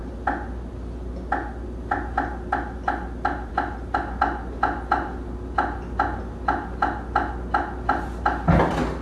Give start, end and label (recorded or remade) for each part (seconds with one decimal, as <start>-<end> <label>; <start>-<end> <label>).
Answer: 0.0-9.0 recorded